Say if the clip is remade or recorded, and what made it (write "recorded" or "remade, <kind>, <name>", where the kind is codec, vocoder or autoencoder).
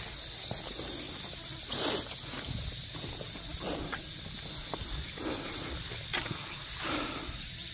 recorded